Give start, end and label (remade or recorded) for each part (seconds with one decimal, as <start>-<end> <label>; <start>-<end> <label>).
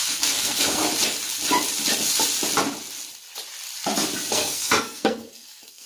0.0-0.8 remade; 0.8-4.3 recorded; 4.3-5.9 remade